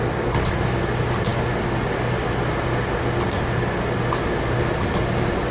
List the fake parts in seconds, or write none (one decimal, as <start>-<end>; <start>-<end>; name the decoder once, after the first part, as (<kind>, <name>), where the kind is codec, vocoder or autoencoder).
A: none